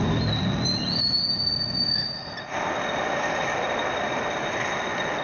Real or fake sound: real